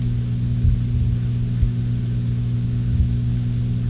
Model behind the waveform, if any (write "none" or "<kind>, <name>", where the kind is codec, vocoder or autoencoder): none